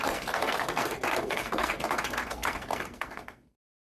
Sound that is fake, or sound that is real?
fake